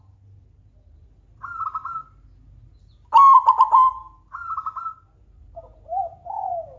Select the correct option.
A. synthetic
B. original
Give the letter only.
B